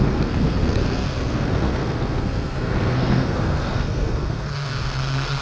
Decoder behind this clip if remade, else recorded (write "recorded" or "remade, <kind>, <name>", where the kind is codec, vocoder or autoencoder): remade, codec, SNAC